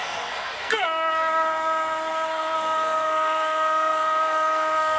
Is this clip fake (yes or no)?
yes